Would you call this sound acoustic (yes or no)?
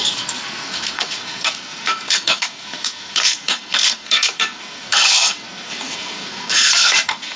no